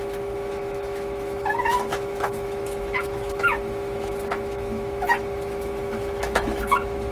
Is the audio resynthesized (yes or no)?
yes